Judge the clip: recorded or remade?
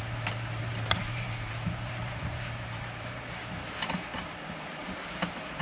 remade